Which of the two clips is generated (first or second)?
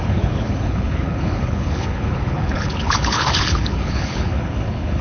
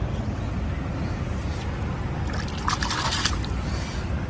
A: first